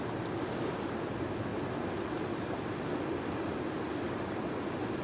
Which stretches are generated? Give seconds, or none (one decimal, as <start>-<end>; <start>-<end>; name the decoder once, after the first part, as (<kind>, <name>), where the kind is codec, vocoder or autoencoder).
none

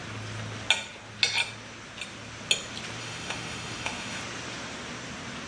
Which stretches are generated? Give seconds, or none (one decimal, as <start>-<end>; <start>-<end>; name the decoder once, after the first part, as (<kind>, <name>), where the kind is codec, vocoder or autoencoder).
3.0-4.2 (autoencoder, DAC-VAE)